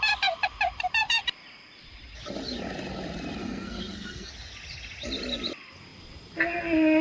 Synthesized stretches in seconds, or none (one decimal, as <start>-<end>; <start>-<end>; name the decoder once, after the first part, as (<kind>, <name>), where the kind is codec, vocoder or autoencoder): 3.4-4.3 (codec, SNAC)